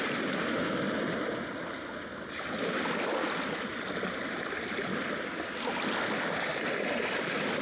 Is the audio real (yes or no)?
yes